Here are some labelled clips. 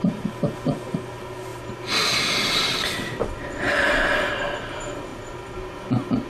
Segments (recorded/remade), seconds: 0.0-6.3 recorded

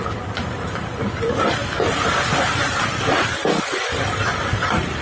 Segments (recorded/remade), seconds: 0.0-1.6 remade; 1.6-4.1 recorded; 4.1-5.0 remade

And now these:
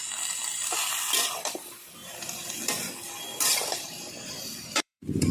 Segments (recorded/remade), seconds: 0.0-2.0 recorded; 2.0-2.6 remade; 2.6-3.3 recorded; 3.3-5.3 remade